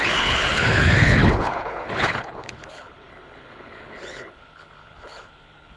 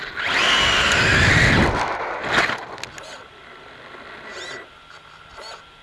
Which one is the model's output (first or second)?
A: first